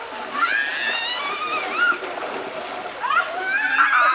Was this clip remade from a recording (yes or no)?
no